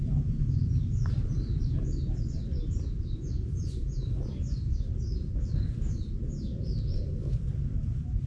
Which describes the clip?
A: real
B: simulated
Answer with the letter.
B